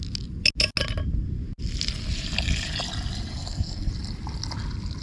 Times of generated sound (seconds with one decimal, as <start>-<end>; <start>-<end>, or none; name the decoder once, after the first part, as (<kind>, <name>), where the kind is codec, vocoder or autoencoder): 3.3-3.9 (codec, SNAC)